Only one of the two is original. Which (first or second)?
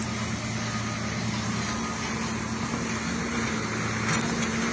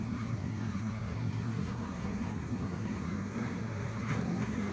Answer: first